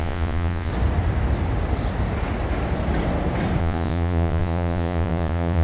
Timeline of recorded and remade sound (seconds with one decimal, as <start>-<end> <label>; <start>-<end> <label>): 0.0-0.7 remade; 0.7-3.6 recorded; 3.6-5.6 remade